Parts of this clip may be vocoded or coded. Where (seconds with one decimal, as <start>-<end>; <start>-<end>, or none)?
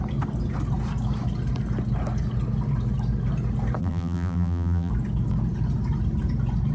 3.8-4.9